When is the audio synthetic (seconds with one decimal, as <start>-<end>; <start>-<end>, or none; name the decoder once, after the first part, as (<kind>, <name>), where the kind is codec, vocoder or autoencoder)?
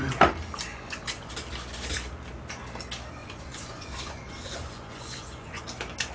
0.7-1.3 (vocoder, Vocos); 3.2-5.6